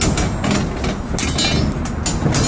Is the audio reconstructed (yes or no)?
no